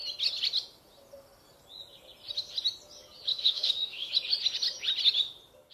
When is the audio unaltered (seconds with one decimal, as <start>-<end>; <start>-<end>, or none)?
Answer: 0.0-3.3; 4.1-5.7